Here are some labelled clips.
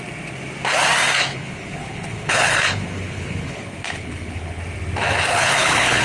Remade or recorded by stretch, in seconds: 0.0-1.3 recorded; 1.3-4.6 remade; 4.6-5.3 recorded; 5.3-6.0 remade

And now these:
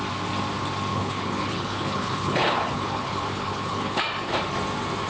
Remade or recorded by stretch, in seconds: 0.0-0.9 recorded; 0.9-4.0 remade; 4.0-5.1 recorded

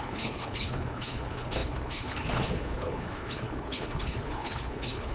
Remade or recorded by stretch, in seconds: 0.0-5.1 remade